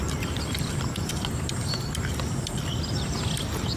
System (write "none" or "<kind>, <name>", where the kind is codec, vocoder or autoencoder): vocoder, BigVGAN v2